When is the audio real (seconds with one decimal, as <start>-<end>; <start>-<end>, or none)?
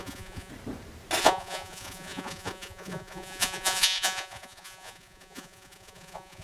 0.5-1.2